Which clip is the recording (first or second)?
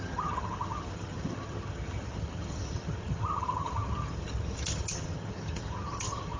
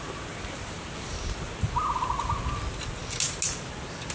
second